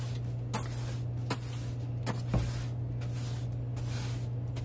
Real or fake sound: real